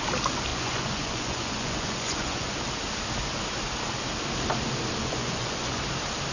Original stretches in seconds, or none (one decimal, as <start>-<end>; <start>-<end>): 0.0-0.5; 2.5-5.0; 5.8-6.3